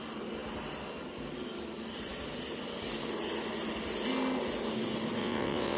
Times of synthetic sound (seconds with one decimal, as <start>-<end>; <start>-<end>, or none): 5.2-5.8